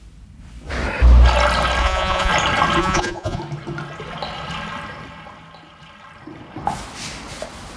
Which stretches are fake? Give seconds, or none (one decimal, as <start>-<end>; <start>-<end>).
1.8-2.3; 2.8-3.4